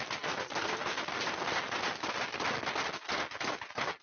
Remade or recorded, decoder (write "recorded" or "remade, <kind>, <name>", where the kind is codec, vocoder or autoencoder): recorded